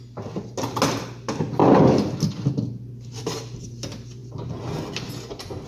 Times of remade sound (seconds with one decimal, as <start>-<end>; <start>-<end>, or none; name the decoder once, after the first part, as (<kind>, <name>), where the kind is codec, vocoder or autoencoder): none